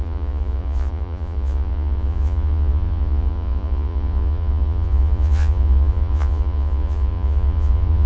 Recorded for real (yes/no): no